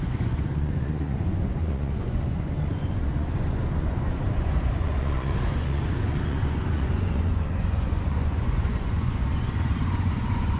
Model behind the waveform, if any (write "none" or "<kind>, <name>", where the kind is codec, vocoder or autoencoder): vocoder, Vocos